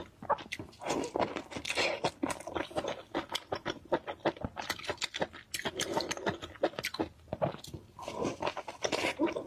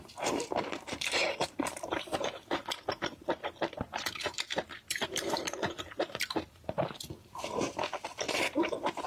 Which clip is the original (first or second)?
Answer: first